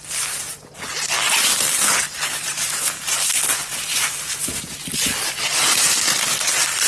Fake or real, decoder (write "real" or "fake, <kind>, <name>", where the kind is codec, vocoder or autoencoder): fake, vocoder, BigVGAN v2